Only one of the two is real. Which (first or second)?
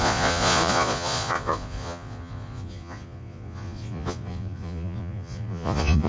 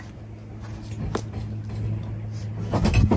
second